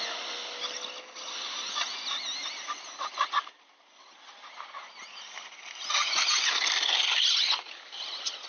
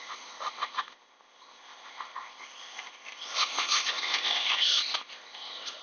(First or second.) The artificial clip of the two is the second